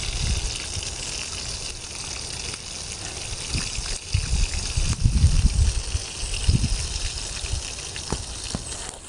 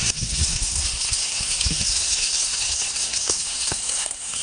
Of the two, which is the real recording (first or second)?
first